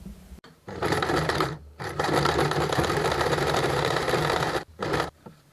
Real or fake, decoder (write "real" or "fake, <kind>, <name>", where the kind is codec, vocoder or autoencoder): fake, vocoder, BigVGAN v2